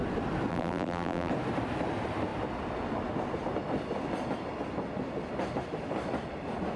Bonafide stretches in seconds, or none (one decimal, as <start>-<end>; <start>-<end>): 0.0-0.5; 1.3-6.8